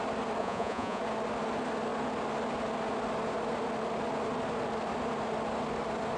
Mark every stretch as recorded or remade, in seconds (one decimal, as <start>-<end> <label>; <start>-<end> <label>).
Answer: 0.0-0.4 recorded; 0.4-1.0 remade; 1.0-6.2 recorded